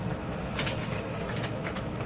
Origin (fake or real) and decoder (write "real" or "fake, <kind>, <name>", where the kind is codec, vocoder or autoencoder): fake, autoencoder, DAC-VAE